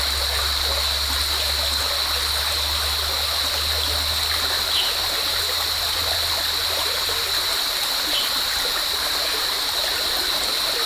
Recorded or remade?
recorded